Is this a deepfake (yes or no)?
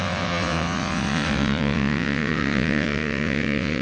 yes